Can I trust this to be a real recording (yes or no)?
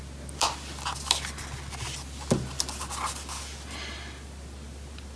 yes